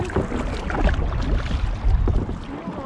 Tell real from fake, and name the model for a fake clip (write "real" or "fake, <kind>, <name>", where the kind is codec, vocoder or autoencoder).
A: real